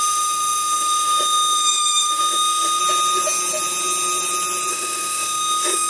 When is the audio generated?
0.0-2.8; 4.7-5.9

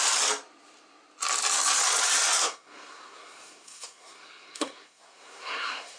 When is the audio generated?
2.4-6.0

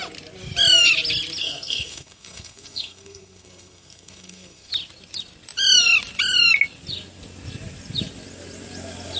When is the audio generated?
1.4-4.7

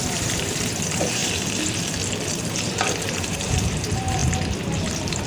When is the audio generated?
0.0-1.2; 2.4-4.2; 4.8-5.3

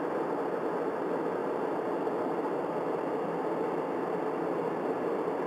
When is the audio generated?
none

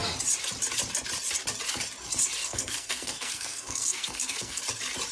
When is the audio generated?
2.4-4.6

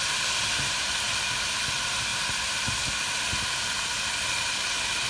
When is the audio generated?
2.1-5.1

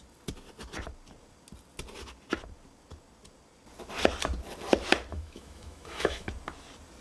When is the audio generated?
5.1-6.3